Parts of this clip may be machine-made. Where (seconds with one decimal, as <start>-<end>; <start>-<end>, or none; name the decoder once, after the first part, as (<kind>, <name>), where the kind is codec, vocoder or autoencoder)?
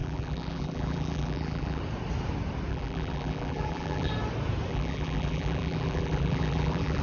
0.0-1.8 (vocoder, BigVGAN v2); 2.7-4.1; 4.7-7.0